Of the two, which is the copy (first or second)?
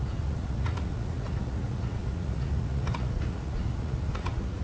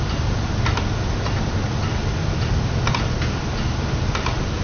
first